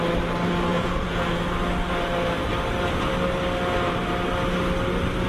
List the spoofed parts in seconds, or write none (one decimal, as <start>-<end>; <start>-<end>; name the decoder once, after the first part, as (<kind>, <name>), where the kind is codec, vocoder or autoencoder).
0.7-1.2 (vocoder, Vocos)